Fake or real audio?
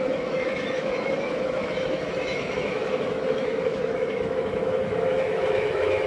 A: fake